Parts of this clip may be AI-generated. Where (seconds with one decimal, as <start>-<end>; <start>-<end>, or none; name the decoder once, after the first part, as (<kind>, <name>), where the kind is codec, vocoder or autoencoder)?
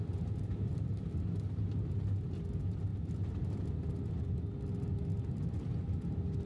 none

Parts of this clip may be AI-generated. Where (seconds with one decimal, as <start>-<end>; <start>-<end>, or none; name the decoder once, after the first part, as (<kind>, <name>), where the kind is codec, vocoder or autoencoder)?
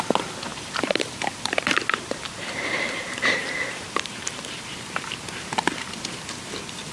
0.5-4.6 (vocoder, BigVGAN v2)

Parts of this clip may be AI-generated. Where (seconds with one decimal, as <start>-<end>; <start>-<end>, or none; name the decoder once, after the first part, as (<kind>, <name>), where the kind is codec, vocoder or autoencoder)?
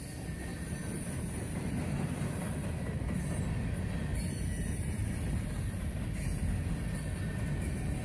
0.5-2.4 (vocoder, BigVGAN v2); 4.1-6.7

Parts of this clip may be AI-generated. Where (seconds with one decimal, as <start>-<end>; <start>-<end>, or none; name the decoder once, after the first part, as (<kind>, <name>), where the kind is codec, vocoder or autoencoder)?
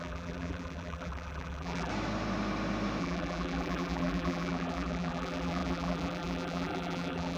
0.0-1.9 (vocoder, BigVGAN v2); 3.0-7.4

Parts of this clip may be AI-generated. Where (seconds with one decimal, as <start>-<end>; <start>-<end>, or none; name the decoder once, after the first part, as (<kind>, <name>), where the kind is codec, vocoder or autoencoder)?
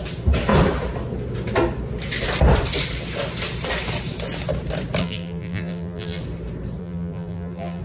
5.0-6.2 (vocoder, BigVGAN v2); 6.8-7.8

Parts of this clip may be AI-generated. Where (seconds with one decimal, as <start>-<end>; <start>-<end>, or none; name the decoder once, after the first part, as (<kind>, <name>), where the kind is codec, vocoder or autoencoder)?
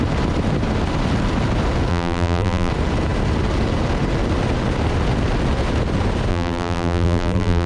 1.9-2.7 (vocoder, BigVGAN v2); 6.3-7.7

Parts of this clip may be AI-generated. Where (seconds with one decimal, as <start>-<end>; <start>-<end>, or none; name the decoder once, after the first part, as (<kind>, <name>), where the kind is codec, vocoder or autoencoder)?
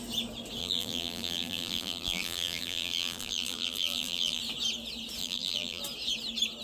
0.6-4.4 (vocoder, BigVGAN v2); 5.2-5.8